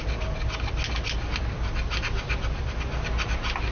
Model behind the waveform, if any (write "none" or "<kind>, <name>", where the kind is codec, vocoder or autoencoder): none